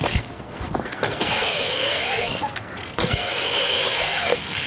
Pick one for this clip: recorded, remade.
remade